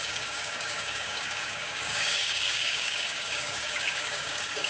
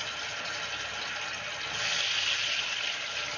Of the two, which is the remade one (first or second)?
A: first